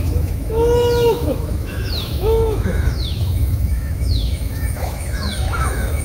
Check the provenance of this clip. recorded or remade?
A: remade